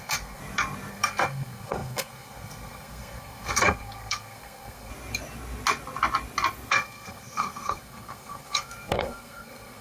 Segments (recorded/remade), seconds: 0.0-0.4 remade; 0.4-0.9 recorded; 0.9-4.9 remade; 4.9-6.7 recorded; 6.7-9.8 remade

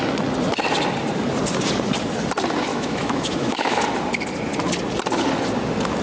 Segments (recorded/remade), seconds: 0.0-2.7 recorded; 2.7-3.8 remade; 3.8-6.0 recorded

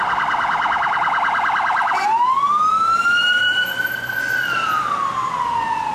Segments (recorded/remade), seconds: 0.0-1.8 recorded; 1.8-2.4 remade; 2.4-2.9 recorded; 2.9-4.9 remade; 4.9-5.9 recorded

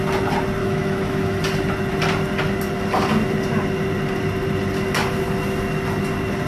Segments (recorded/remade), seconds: 0.0-0.6 recorded; 0.6-1.4 remade; 1.4-6.5 recorded